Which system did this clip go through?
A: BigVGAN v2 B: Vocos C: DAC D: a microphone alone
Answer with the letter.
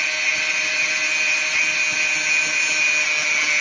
D